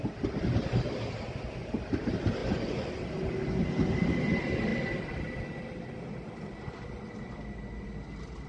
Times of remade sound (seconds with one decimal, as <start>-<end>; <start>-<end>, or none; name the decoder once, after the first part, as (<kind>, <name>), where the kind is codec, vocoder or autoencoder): 2.4-2.9 (vocoder, Vocos)